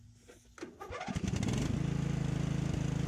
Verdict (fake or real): real